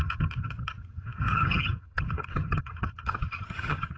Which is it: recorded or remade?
remade